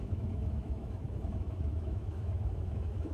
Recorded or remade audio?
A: remade